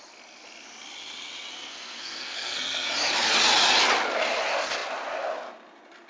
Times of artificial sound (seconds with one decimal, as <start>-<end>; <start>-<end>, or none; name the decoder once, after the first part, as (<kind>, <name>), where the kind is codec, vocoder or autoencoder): 1.5-2.9 (codec, SNAC)